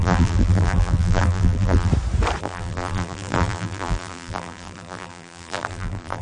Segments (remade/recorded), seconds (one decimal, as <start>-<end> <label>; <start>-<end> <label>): 0.0-1.9 remade; 1.9-2.4 recorded; 2.4-6.2 remade